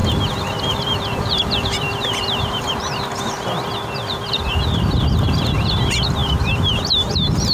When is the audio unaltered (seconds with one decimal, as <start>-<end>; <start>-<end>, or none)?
none